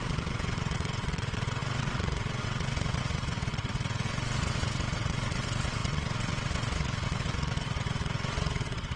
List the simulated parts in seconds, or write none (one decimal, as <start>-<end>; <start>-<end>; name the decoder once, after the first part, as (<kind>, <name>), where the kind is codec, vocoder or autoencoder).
0.0-9.0 (vocoder, WaveNeXt)